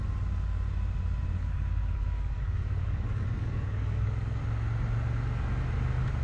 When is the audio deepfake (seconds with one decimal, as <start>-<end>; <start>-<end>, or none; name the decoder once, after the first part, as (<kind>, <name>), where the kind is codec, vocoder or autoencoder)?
1.4-4.4 (codec, DAC)

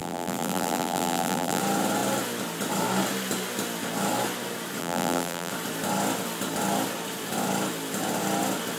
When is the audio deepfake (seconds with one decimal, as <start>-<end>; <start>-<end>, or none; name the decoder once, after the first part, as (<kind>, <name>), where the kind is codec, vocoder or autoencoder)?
0.0-1.6 (vocoder, BigVGAN v2); 4.8-5.5

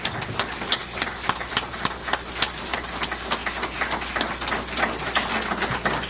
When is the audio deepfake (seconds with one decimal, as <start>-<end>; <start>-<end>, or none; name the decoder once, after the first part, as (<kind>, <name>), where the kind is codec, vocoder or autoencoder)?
none